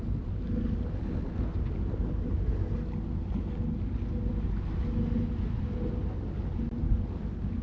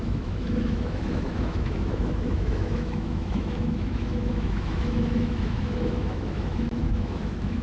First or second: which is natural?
first